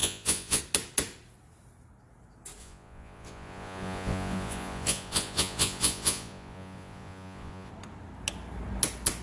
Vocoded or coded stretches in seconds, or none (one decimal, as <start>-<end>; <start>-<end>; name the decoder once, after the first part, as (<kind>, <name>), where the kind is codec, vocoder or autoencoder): 0.0-0.6 (vocoder, Vocos); 2.6-7.7